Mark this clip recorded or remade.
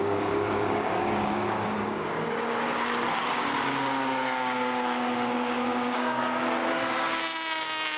remade